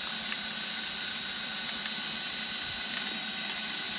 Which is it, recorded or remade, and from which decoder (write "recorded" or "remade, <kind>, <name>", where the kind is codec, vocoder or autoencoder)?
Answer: recorded